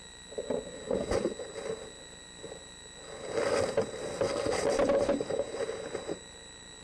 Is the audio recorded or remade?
remade